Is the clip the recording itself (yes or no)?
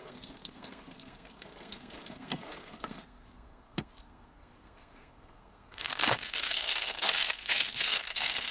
no